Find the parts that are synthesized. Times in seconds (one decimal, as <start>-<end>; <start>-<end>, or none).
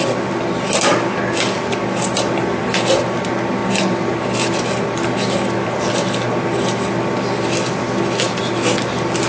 none